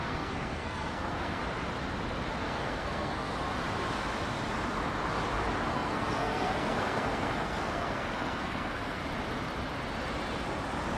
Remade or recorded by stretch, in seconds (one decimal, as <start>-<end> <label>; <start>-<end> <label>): 0.0-1.4 remade; 1.4-2.4 recorded; 2.4-3.3 remade; 3.3-5.7 recorded; 5.7-9.0 remade; 9.0-11.0 recorded